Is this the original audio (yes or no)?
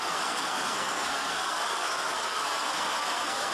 no